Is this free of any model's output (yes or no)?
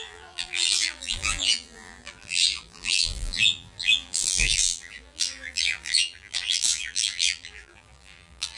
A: no